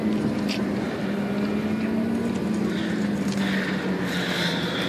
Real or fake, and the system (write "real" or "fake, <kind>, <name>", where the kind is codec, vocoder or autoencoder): real